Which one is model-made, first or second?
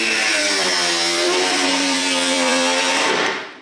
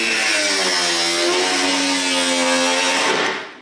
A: first